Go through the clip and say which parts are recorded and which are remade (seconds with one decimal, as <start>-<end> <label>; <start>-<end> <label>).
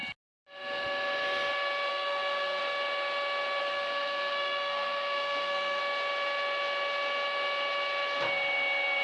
0.0-1.9 recorded; 1.9-2.6 remade; 2.6-3.6 recorded; 3.6-5.8 remade; 5.8-9.0 recorded